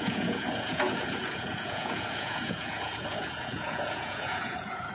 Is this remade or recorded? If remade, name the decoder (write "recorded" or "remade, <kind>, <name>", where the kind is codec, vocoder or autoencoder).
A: remade, vocoder, Vocos